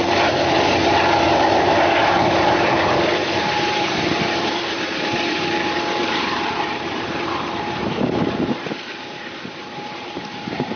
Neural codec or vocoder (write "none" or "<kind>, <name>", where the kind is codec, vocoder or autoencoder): vocoder, BigVGAN v2